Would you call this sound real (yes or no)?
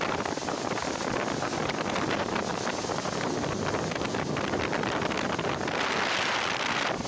no